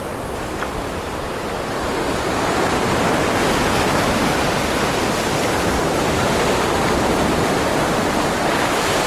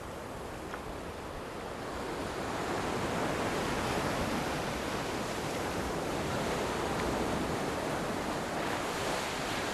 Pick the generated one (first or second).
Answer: first